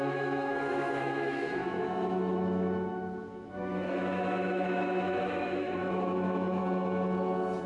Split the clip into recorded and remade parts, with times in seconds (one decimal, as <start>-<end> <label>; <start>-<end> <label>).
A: 0.0-6.6 remade; 6.6-7.7 recorded